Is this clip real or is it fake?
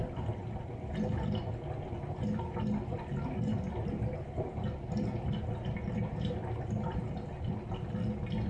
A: real